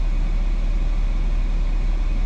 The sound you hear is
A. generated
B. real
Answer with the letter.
B